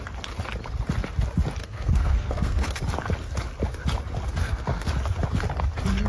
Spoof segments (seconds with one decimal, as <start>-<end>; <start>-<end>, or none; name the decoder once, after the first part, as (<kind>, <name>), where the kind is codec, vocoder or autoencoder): 1.6-2.8 (codec, SNAC); 4.4-4.9